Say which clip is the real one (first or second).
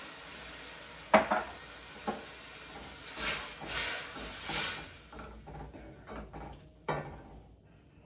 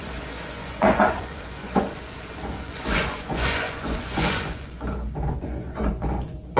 first